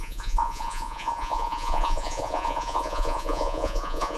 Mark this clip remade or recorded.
remade